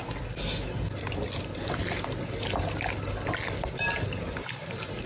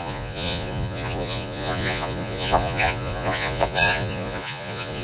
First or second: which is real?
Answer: first